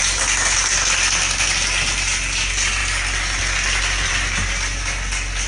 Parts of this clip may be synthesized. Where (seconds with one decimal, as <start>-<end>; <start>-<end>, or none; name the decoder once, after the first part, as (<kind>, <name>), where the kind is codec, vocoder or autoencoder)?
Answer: none